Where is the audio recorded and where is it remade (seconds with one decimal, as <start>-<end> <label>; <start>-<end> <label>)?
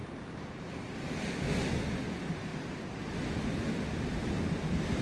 0.0-5.0 recorded